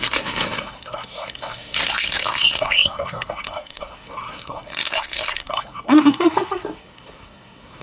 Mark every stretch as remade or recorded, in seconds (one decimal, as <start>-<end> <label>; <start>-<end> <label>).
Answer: 0.0-7.8 remade